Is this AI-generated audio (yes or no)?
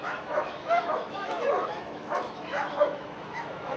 yes